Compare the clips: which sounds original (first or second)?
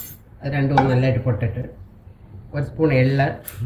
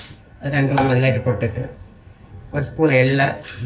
first